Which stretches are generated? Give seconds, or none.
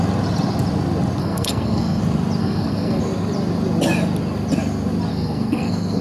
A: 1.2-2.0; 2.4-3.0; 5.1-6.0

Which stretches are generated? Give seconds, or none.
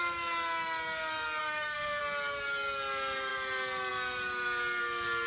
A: 1.4-2.0